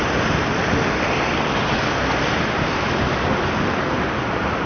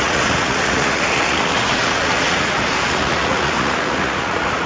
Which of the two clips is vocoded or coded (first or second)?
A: second